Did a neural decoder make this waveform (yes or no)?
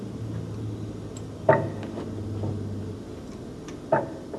no